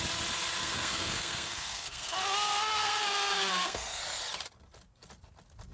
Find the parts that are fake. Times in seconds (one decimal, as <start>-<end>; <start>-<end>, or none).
0.6-4.0